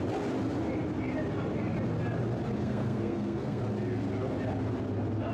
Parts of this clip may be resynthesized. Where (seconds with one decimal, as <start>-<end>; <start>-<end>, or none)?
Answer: 2.6-3.6

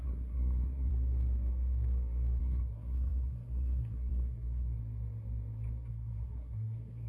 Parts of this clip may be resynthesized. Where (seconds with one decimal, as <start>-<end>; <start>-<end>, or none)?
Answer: 0.0-0.9; 2.4-4.8; 5.9-7.1

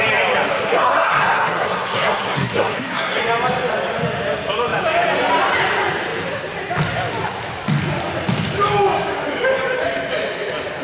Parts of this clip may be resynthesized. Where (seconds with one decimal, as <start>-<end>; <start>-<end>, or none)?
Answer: 0.7-3.2

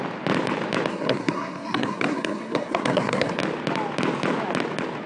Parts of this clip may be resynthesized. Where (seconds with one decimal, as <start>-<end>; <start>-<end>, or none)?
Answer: 0.9-3.4

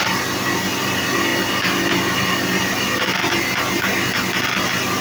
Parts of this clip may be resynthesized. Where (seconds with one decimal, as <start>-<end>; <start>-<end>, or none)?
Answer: none

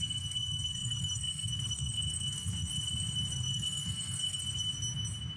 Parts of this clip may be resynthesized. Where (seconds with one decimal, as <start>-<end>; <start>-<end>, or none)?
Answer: 0.0-2.7; 3.3-4.4